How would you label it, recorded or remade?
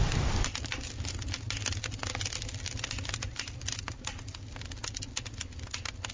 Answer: recorded